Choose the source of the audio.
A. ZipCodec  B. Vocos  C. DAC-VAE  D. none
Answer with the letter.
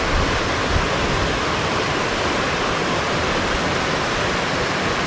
D